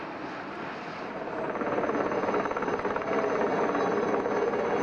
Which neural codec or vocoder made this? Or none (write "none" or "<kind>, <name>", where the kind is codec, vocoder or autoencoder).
none